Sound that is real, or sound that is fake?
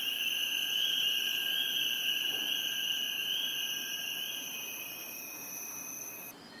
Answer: real